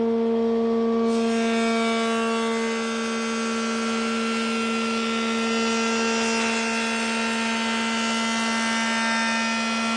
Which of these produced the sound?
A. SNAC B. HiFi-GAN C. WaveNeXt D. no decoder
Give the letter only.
D